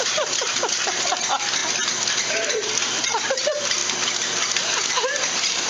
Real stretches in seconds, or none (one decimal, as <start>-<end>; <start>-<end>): 3.8-4.9